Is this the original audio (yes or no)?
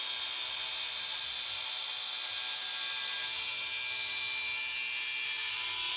yes